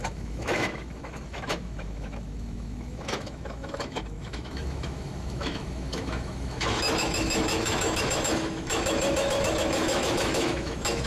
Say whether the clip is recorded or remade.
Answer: remade